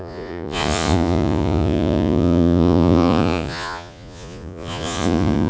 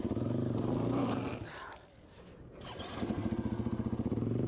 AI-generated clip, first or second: first